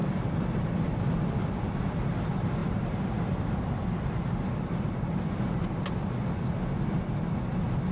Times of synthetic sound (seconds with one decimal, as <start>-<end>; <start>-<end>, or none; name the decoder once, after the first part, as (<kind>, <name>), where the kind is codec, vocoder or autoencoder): 2.6-4.8 (vocoder, BigVGAN v2)